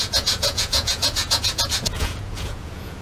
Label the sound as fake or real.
fake